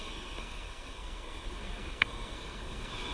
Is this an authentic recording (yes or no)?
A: no